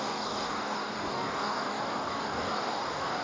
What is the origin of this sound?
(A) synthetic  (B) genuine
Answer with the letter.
A